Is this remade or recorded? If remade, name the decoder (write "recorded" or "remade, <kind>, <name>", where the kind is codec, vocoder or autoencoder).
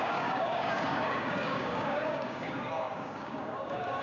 remade, codec, DAC